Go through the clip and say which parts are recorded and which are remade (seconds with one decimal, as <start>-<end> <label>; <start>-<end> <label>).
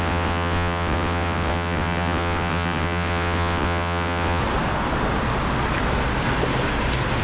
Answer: 0.0-4.4 remade; 4.4-7.2 recorded